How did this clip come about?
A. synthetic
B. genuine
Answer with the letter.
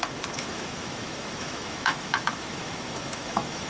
A